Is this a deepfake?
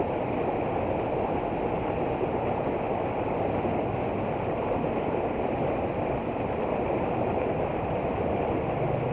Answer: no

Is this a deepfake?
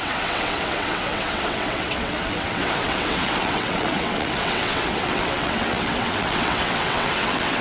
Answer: yes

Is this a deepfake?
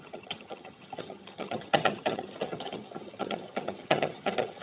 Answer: yes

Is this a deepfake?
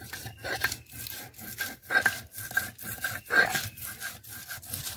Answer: no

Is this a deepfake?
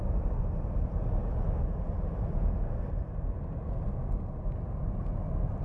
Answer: no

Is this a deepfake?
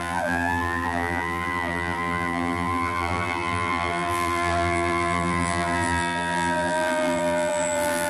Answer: yes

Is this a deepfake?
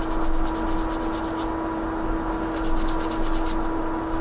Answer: no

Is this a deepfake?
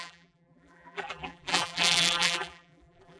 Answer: yes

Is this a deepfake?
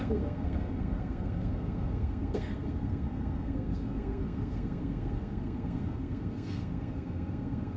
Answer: yes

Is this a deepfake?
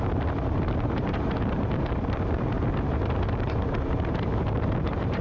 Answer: yes